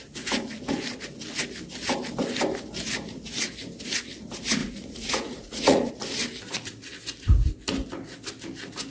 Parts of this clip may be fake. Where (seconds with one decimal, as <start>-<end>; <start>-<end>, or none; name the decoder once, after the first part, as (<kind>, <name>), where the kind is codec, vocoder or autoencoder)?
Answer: 4.6-5.9 (vocoder, Vocos)